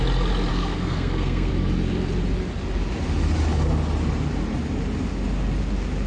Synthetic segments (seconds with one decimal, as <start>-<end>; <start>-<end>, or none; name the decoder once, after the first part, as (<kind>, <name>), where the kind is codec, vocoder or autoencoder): 0.5-1.5 (codec, SNAC)